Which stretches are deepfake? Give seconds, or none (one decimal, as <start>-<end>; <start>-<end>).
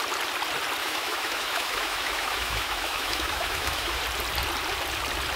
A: 0.8-4.0